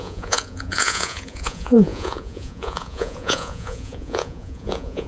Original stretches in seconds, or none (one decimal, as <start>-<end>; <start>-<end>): none